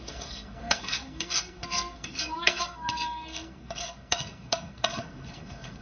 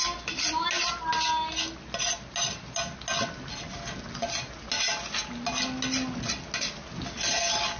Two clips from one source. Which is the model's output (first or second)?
first